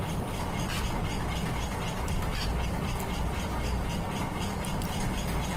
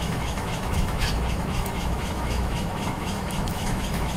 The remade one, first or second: second